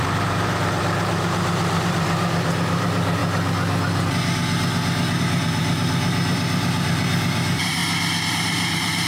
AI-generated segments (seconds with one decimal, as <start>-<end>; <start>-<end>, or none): 0.0-3.2; 5.2-7.8; 8.3-9.1